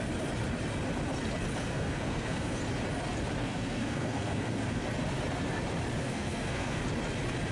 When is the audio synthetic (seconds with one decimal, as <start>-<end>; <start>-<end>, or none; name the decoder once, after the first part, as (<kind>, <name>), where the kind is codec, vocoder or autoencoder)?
1.7-2.6 (codec, SNAC); 3.4-4.8; 6.0-6.8